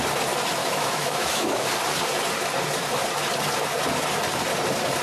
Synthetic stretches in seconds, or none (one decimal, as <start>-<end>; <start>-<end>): 0.6-1.7

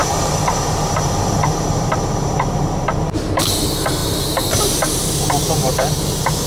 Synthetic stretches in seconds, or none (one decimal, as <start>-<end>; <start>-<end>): 0.0-6.5

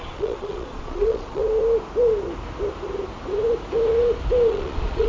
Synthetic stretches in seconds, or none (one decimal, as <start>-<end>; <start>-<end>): 0.0-1.4; 4.5-5.1

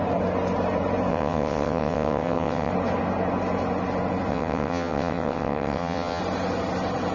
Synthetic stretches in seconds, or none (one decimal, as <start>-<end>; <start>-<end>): 1.1-2.7; 4.3-6.2

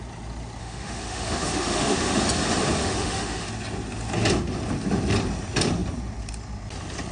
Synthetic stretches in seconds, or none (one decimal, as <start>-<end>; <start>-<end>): 0.6-2.2; 2.8-3.5

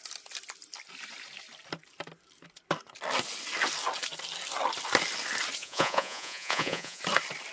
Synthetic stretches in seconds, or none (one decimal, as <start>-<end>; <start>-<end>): 5.6-7.0